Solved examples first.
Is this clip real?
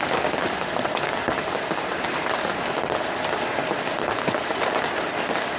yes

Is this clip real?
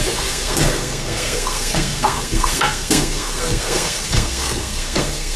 no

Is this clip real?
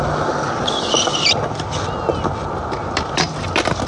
yes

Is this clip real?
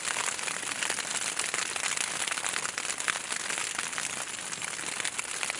yes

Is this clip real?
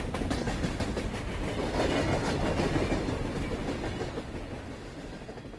yes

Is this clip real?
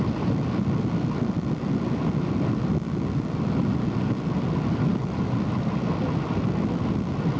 yes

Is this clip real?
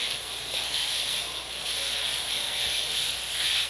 no